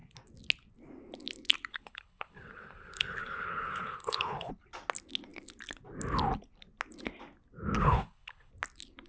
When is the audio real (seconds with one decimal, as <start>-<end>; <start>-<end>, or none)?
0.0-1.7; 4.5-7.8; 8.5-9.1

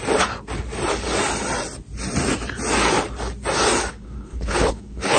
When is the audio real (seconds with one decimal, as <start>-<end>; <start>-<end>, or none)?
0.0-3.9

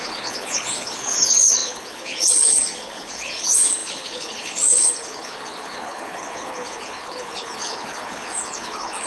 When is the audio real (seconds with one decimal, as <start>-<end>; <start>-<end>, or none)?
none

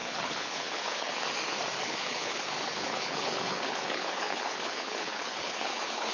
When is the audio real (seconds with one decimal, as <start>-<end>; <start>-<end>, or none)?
1.1-1.8

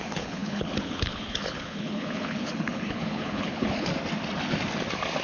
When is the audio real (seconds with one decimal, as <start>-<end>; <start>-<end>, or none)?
3.9-5.2